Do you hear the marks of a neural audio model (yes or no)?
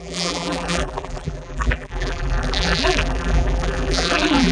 yes